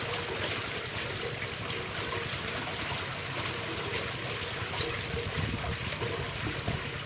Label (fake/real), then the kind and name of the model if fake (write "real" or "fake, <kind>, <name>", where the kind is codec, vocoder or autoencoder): real